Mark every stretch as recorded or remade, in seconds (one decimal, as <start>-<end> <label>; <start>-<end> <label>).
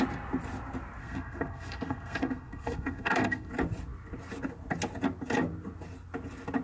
0.0-1.0 recorded; 1.0-3.5 remade; 3.5-6.6 recorded